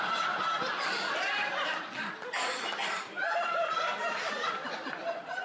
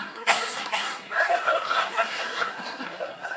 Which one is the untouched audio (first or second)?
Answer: first